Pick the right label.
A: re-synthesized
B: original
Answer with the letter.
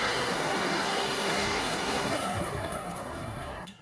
A